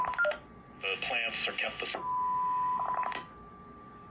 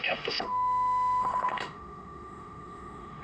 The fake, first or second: second